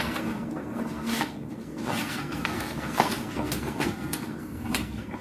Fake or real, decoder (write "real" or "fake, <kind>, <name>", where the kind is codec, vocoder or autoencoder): fake, codec, SNAC